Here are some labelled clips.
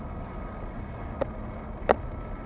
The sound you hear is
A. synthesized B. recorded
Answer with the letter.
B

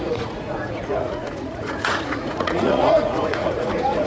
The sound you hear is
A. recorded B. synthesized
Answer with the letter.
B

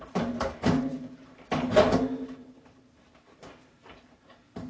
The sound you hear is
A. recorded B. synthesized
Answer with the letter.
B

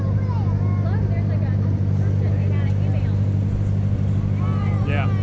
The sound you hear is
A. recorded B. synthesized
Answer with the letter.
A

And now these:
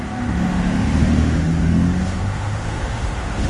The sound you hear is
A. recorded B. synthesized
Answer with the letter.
B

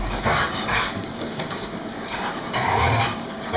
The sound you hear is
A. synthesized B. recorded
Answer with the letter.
A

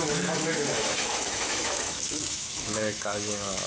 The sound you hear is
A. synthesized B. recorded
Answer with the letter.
A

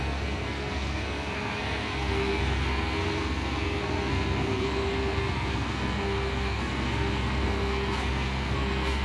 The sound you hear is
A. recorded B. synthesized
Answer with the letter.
B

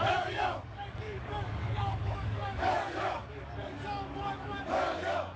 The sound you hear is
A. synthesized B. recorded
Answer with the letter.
A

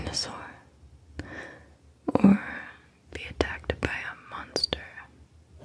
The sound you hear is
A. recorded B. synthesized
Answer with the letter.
A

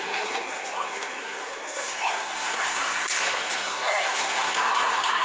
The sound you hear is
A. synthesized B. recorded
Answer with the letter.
A